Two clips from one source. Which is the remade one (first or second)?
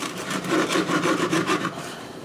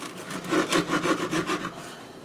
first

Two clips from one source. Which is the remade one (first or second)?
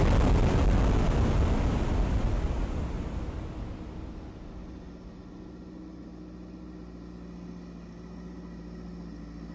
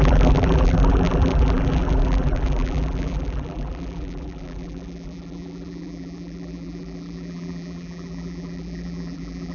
second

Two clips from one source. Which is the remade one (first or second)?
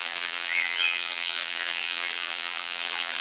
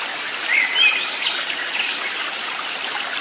first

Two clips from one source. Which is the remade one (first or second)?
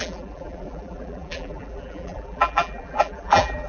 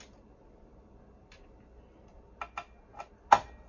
first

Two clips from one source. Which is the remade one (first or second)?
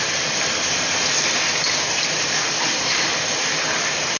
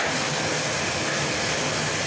first